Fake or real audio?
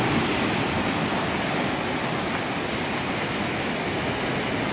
real